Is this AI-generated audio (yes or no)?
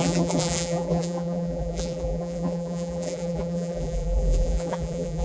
yes